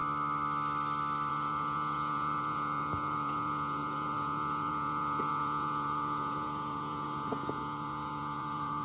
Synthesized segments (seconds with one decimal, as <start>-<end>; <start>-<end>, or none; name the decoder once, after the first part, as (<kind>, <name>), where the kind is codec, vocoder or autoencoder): 1.3-8.8 (vocoder, Vocos)